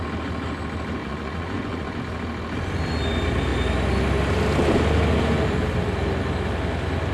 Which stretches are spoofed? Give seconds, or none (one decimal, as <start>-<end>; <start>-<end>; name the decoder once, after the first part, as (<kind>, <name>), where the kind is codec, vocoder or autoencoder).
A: 1.0-2.0 (vocoder, Vocos)